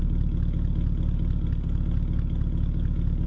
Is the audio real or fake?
real